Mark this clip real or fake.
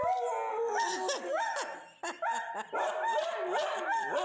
real